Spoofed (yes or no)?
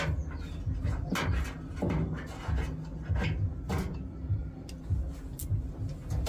no